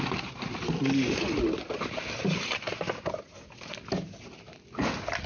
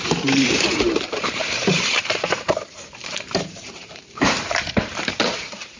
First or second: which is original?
first